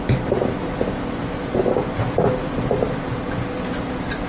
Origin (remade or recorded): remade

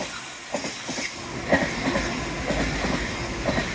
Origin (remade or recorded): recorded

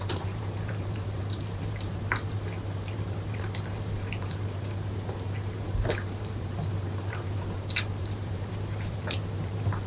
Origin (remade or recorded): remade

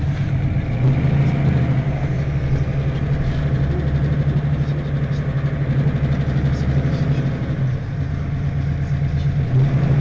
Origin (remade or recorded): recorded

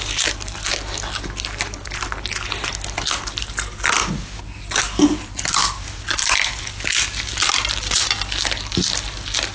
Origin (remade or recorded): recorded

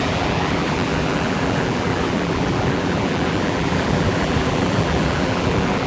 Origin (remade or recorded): remade